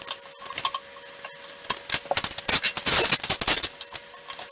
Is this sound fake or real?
real